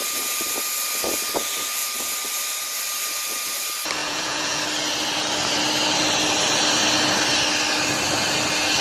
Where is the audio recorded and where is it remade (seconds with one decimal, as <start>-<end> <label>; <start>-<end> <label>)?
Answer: 0.0-4.0 recorded; 4.0-4.6 remade; 4.6-8.8 recorded